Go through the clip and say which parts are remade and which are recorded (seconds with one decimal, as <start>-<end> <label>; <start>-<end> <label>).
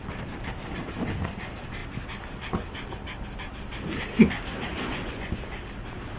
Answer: 0.0-4.7 recorded; 4.7-5.3 remade; 5.3-6.2 recorded